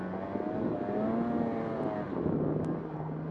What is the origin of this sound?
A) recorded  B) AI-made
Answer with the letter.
A